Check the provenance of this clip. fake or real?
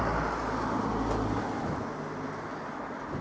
real